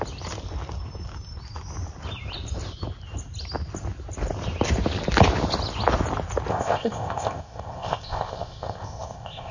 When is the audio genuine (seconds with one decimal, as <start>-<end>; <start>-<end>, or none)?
0.0-6.5